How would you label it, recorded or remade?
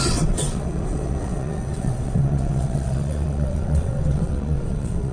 remade